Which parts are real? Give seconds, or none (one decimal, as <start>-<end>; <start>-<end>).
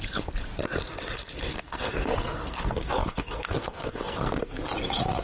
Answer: 0.0-1.5; 4.6-5.2